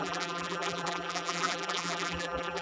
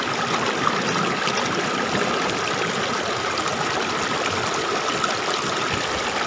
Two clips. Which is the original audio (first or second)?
second